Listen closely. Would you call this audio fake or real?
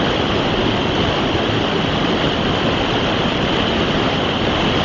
real